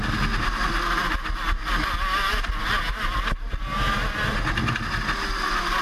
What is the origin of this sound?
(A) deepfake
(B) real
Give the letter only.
B